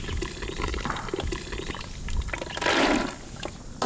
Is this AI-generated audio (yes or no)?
no